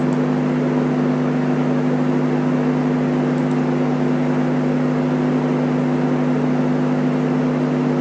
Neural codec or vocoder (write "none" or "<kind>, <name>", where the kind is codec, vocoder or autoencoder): none